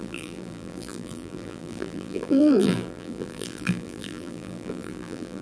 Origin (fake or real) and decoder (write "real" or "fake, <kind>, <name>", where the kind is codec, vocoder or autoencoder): fake, vocoder, BigVGAN v2